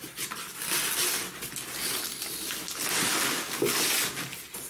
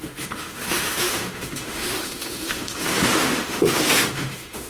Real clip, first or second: first